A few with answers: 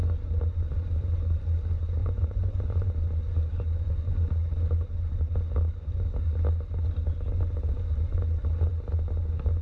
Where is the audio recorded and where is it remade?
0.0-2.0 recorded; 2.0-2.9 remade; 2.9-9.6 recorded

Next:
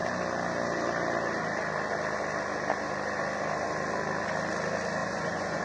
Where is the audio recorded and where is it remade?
0.0-5.0 recorded; 5.0-5.6 remade

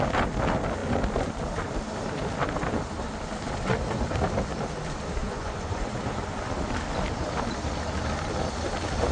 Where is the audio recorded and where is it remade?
0.0-5.2 recorded; 5.2-5.8 remade; 5.8-9.1 recorded

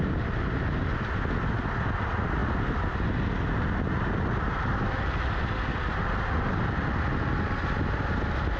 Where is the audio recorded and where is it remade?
0.0-8.6 recorded

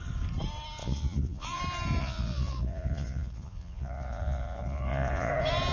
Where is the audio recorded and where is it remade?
0.0-0.8 recorded; 0.8-1.6 remade; 1.6-2.0 recorded; 2.0-5.3 remade; 5.3-5.7 recorded

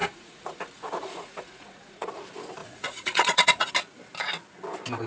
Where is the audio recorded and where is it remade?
0.0-2.1 remade; 2.1-2.6 recorded; 2.6-3.7 remade; 3.7-5.1 recorded

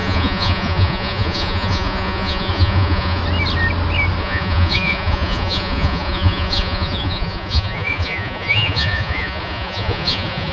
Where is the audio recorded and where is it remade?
0.0-3.2 remade; 3.2-4.2 recorded; 4.2-10.5 remade